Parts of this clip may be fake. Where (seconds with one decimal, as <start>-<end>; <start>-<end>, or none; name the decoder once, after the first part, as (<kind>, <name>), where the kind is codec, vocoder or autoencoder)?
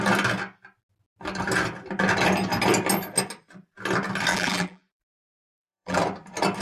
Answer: 4.3-6.0 (vocoder, BigVGAN v2)